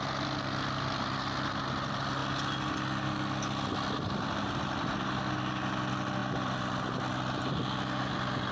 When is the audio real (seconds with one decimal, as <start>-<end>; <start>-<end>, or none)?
0.0-8.5